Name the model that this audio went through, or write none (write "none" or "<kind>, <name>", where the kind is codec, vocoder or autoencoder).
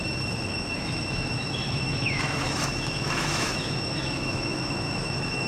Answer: autoencoder, DAC-VAE